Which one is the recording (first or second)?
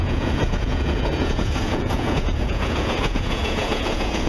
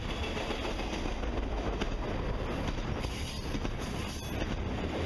second